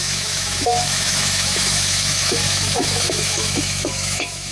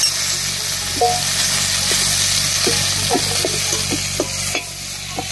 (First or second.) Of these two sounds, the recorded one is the second